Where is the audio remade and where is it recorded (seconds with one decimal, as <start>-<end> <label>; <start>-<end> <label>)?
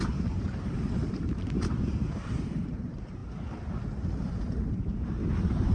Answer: 0.0-3.2 remade; 3.2-4.2 recorded; 4.2-5.7 remade